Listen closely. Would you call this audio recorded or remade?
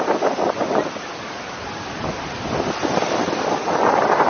recorded